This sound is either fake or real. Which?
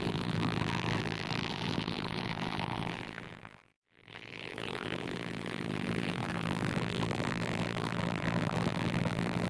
fake